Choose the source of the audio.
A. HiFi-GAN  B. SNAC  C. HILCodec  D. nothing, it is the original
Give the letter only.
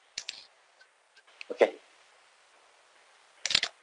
D